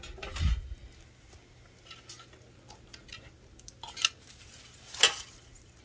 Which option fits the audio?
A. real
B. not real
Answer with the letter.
A